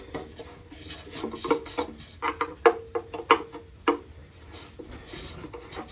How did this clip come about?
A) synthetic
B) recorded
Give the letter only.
B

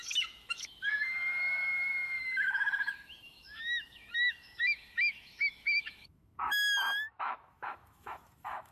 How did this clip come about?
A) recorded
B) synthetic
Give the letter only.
B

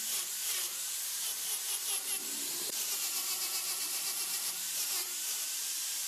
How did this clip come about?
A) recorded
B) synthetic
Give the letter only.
B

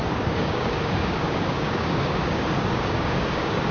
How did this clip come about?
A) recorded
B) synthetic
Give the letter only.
B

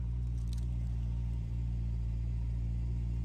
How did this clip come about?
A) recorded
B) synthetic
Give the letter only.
B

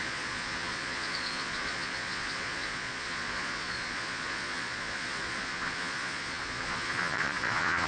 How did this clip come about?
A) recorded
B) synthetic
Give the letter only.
B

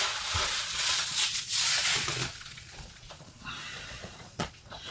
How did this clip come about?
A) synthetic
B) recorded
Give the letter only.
A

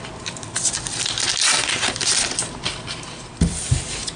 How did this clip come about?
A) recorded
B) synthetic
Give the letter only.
B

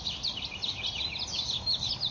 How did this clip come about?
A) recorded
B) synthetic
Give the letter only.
A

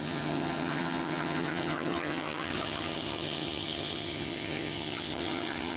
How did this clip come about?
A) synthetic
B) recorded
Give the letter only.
A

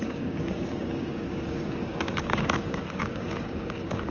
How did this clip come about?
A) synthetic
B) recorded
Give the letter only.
A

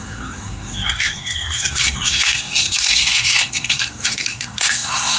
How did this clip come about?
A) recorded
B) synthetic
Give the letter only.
B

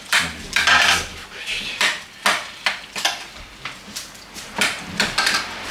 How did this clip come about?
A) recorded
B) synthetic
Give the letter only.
A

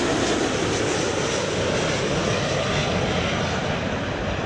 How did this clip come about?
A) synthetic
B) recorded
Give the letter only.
B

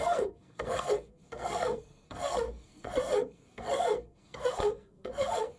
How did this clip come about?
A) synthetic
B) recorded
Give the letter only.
A